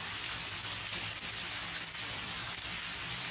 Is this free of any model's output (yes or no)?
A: no